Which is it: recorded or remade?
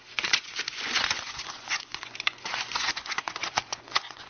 remade